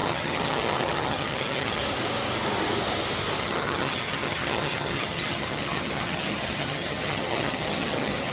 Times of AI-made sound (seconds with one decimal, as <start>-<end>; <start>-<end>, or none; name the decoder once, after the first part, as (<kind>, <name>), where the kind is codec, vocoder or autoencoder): 0.0-1.8 (vocoder, HiFi-GAN); 3.4-8.3

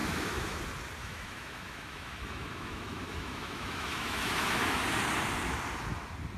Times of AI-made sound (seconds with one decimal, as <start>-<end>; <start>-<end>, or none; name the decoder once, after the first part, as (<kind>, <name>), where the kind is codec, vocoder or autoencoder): 0.0-0.6 (autoencoder, DAC-VAE); 1.0-4.8

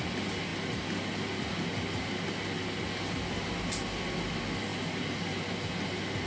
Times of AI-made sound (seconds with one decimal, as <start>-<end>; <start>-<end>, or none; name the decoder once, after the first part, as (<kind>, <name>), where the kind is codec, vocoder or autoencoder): none

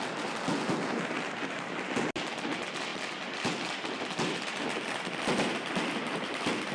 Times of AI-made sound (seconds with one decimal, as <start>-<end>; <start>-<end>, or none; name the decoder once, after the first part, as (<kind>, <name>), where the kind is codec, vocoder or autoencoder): none

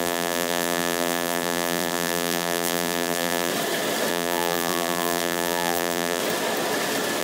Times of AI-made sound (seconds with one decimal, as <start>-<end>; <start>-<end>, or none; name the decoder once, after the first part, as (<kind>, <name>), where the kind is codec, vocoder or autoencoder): 0.0-3.5 (vocoder, BigVGAN v2); 4.1-6.2

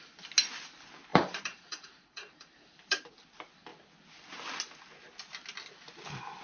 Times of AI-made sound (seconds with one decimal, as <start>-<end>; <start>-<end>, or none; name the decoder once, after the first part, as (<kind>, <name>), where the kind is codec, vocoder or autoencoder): 1.1-3.1 (vocoder, BigVGAN v2)

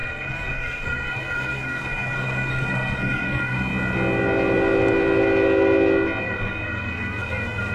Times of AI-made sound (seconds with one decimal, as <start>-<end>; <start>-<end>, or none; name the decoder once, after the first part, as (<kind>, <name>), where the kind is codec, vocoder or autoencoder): 0.0-3.7 (codec, SNAC); 6.2-7.7